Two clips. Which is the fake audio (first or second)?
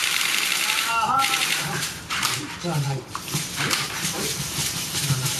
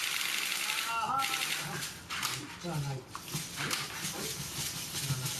first